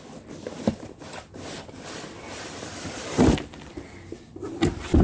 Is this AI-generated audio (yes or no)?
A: no